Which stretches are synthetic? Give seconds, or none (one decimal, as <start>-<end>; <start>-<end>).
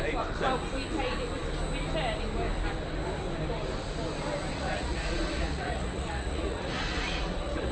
4.5-7.7